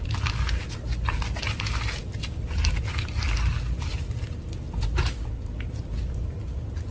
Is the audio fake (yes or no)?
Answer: no